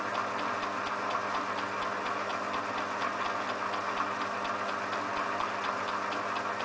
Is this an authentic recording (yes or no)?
yes